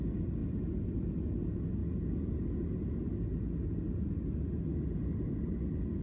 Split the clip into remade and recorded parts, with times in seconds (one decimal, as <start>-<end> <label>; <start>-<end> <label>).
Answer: 0.0-6.0 recorded